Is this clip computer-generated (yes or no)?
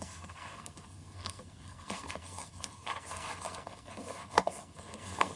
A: yes